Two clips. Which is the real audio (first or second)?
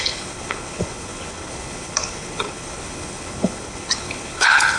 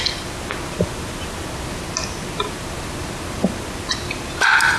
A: second